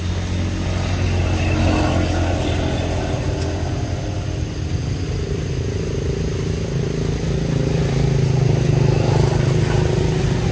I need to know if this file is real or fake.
real